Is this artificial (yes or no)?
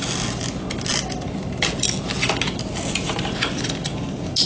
no